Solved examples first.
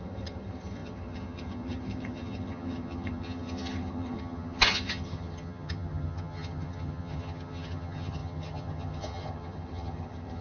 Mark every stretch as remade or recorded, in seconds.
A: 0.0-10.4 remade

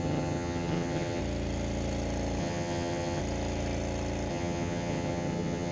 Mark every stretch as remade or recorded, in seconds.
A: 0.0-1.2 remade; 1.2-2.4 recorded; 2.4-3.2 remade; 3.2-4.3 recorded; 4.3-5.7 remade

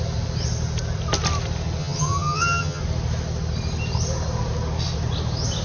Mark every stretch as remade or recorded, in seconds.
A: 0.0-1.8 recorded; 1.8-2.8 remade; 2.8-5.6 recorded

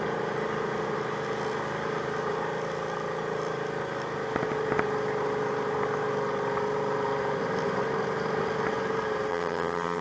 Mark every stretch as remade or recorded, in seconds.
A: 0.0-9.3 recorded; 9.3-10.0 remade

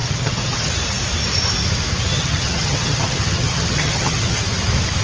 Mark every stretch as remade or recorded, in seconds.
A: 0.0-0.7 remade; 0.7-2.1 recorded; 2.1-4.4 remade; 4.4-5.0 recorded